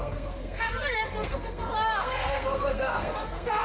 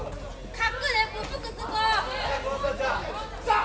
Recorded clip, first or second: second